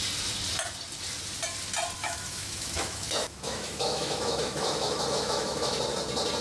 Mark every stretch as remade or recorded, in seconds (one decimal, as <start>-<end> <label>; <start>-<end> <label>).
0.0-2.0 recorded; 2.0-5.8 remade; 5.8-6.4 recorded